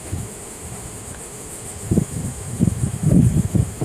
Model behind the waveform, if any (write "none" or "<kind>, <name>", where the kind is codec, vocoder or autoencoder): autoencoder, DAC-VAE